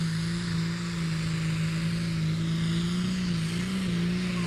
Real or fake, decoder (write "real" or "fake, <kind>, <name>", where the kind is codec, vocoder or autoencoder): real